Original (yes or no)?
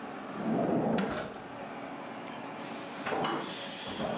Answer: yes